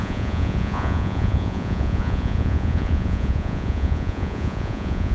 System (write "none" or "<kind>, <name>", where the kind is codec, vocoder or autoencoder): vocoder, Vocos